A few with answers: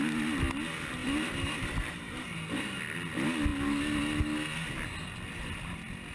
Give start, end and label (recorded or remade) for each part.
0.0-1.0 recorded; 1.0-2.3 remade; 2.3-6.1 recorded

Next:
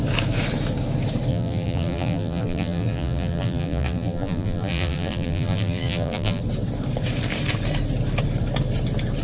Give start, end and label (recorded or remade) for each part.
0.0-1.3 recorded; 1.3-6.4 remade; 6.4-9.2 recorded